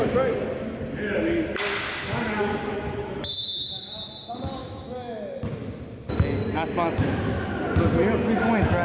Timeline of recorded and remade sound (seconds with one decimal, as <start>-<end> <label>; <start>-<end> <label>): 0.0-2.7 recorded; 2.7-3.3 remade; 3.3-4.6 recorded; 4.6-5.4 remade; 5.4-8.8 recorded